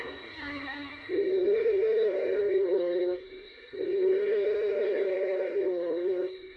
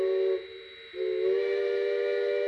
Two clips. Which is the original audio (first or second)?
second